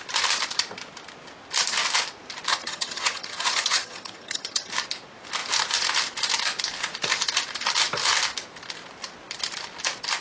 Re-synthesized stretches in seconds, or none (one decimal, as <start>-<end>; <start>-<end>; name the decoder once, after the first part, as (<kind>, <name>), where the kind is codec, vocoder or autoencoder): 2.5-4.7 (vocoder, HiFi-GAN)